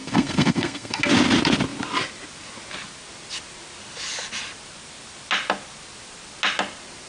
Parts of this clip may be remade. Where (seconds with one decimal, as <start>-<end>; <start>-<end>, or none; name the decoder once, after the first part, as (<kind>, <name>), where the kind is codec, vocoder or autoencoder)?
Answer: 0.0-1.0 (codec, SNAC)